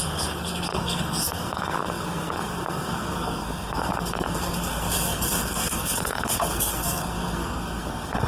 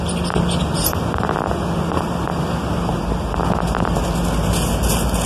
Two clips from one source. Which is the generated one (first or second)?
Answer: first